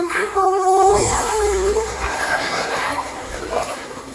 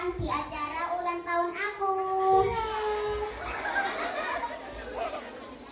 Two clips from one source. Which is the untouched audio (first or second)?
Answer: second